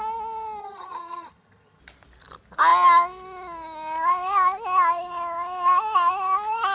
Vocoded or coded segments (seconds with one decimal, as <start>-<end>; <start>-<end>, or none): 0.6-1.8